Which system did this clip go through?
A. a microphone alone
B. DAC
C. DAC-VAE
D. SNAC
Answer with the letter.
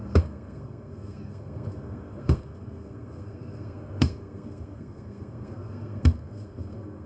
D